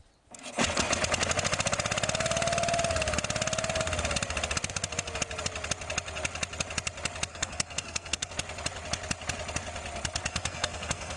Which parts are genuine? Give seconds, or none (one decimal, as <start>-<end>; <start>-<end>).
0.0-7.3; 8.3-10.3